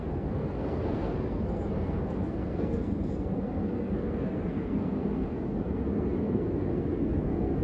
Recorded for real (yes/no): no